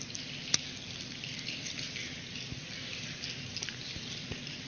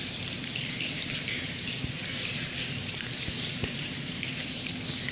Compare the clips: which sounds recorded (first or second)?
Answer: first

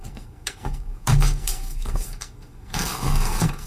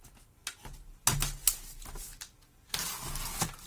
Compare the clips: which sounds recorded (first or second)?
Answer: second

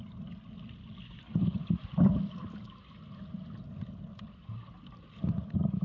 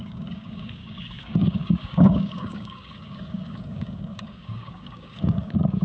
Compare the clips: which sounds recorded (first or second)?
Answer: first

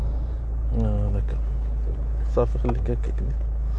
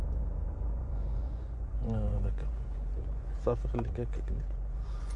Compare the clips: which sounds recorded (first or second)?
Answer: first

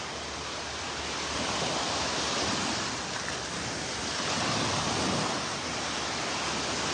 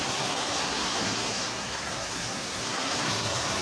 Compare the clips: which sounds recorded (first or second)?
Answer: first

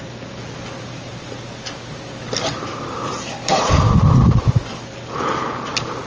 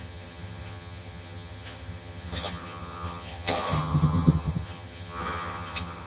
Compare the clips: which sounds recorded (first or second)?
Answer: first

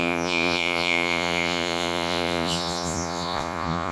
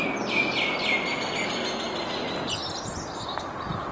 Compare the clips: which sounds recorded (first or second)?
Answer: second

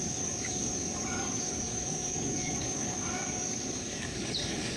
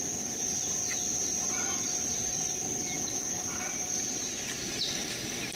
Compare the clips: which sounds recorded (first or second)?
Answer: second